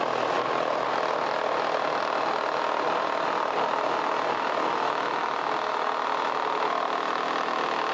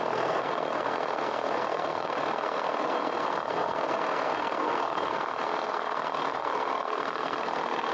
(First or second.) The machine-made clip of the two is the second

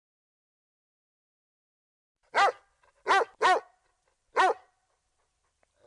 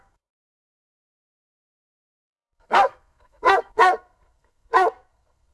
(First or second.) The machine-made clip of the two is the second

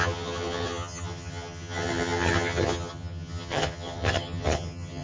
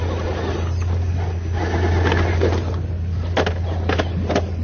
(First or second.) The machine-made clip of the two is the first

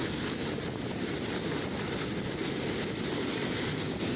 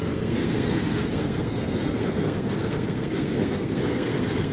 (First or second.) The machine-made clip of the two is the second